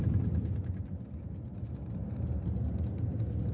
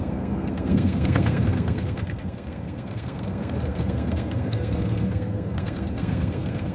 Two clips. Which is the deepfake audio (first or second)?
second